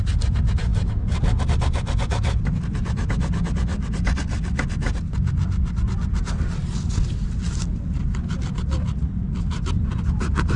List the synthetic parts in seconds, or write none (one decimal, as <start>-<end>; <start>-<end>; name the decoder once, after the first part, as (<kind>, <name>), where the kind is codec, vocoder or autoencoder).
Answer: none